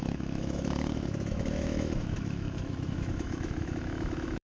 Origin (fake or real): fake